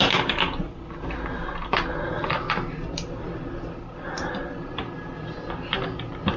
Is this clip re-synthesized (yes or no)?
no